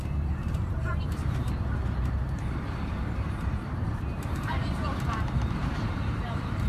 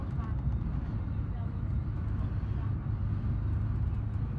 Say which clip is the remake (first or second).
first